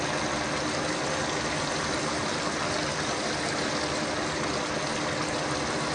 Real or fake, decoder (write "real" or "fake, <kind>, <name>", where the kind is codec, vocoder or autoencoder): real